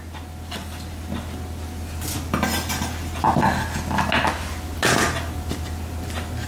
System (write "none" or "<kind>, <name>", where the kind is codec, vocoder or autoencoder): none